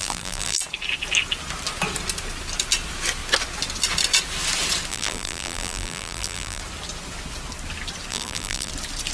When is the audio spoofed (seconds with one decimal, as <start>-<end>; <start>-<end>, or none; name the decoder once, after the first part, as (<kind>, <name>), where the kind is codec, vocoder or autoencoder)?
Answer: 0.0-0.6 (vocoder, BigVGAN v2); 4.9-6.6; 8.1-8.7

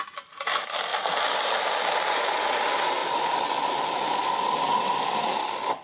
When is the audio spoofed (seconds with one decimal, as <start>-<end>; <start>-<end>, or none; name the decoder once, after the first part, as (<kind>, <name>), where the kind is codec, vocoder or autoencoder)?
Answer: 3.0-5.2 (vocoder, BigVGAN v2)

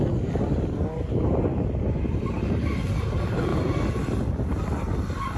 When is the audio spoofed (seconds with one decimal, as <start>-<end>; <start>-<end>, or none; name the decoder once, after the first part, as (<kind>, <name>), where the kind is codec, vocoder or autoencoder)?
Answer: none

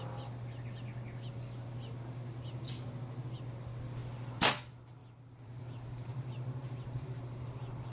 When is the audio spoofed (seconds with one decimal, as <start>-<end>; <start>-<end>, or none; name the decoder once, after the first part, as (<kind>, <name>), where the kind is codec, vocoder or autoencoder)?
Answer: 5.0-5.6 (vocoder, BigVGAN v2); 6.1-7.4

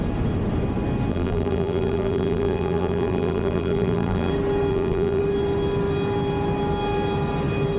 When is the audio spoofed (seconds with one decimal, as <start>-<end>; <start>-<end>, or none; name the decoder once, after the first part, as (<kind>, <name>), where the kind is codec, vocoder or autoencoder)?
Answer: 1.1-4.3 (vocoder, BigVGAN v2); 4.7-5.2

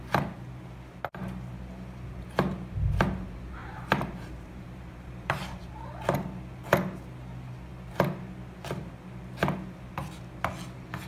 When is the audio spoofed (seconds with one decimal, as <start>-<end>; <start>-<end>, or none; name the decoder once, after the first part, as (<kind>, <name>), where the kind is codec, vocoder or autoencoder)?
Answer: 3.6-5.7 (vocoder, BigVGAN v2)

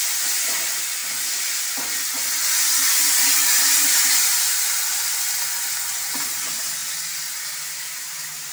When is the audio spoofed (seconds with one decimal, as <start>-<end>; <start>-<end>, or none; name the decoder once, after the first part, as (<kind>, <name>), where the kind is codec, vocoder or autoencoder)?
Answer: none

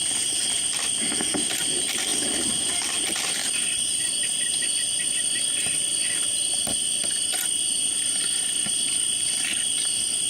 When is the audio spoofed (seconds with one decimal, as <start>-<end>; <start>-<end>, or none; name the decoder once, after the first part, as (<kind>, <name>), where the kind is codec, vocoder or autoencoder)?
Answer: none